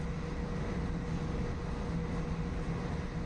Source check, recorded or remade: recorded